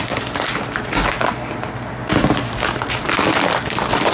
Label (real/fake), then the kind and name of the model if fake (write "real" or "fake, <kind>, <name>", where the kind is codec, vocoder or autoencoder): real